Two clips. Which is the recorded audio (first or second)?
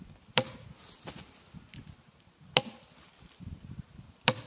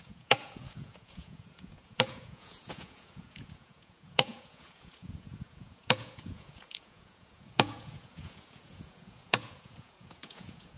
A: first